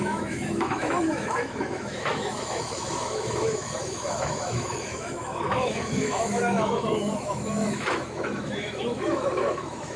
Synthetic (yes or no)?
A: yes